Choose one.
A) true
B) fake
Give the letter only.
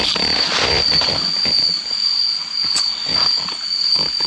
A